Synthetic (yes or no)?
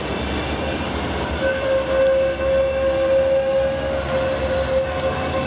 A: no